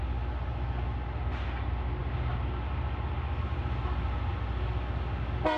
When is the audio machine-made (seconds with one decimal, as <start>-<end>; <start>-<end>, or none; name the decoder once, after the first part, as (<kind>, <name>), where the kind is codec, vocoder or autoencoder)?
none